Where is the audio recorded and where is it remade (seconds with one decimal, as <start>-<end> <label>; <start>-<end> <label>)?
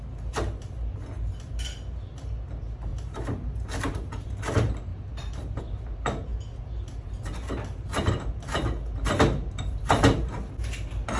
0.0-2.9 recorded; 2.9-4.4 remade; 4.4-4.9 recorded; 4.9-5.6 remade; 5.6-11.2 recorded